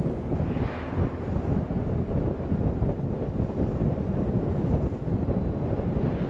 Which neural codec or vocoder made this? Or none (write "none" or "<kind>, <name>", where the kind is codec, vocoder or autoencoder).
none